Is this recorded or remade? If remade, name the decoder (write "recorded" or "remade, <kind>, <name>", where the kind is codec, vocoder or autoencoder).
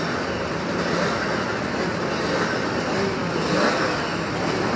recorded